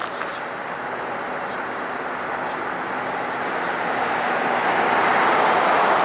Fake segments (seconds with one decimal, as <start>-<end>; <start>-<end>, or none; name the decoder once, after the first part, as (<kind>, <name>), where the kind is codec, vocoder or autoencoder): none

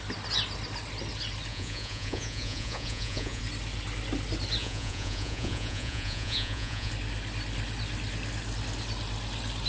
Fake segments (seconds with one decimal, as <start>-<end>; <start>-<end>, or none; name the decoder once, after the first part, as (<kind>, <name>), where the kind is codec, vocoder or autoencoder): 1.5-3.4 (vocoder, Vocos); 4.6-6.9

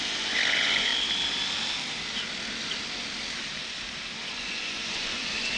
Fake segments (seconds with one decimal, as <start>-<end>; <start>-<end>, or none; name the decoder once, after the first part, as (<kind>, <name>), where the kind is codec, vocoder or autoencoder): 0.0-0.9 (vocoder, Vocos); 4.3-5.6

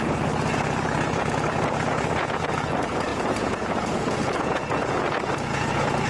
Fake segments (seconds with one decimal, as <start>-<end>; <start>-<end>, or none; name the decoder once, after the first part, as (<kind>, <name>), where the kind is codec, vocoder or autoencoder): 0.0-6.1 (vocoder, Vocos)

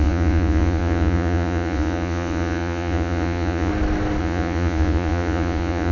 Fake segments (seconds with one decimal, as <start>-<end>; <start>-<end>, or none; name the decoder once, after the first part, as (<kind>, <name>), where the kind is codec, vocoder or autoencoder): 0.0-3.7 (vocoder, Vocos); 4.2-5.9

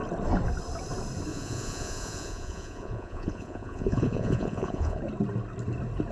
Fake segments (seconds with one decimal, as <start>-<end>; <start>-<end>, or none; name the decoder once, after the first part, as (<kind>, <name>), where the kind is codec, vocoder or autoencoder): 1.3-5.0 (vocoder, Vocos)